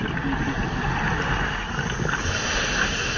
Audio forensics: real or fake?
real